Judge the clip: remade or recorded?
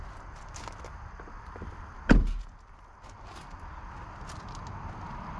recorded